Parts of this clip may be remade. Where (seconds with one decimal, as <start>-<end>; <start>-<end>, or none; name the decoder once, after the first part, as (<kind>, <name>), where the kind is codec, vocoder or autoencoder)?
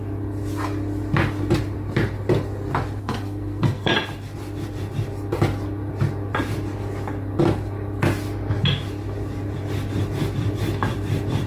3.0-3.9 (codec, SNAC)